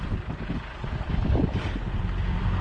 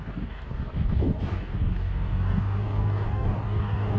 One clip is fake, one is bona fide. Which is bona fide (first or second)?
first